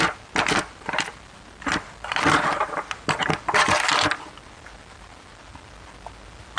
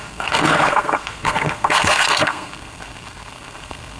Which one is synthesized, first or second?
second